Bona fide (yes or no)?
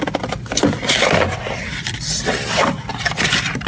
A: no